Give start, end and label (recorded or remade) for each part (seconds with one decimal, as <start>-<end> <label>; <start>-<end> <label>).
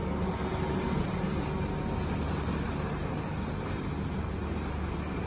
0.0-5.3 recorded